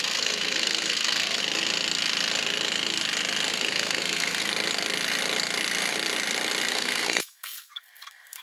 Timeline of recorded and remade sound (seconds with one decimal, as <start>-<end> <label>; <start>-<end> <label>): 0.0-1.4 remade; 1.4-3.5 recorded; 3.5-4.5 remade; 4.5-6.7 recorded; 6.7-8.4 remade